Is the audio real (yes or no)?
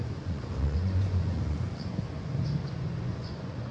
no